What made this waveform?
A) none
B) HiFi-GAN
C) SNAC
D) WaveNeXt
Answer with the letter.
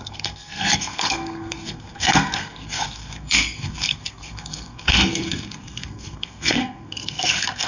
C